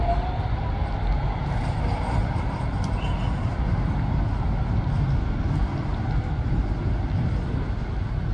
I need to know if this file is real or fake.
real